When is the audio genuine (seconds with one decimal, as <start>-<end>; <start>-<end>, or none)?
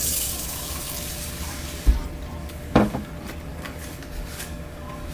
1.9-2.4; 3.1-3.5